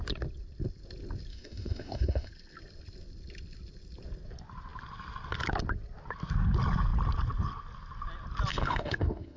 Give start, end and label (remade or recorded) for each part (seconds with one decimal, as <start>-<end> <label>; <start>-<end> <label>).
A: 0.0-1.3 recorded; 1.3-2.3 remade; 2.3-8.5 recorded; 8.5-9.4 remade